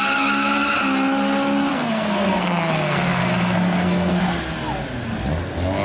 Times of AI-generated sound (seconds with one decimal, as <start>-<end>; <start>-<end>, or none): 1.7-4.2